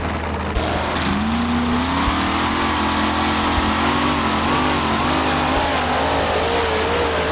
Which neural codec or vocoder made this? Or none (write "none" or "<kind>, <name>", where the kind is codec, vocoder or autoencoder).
none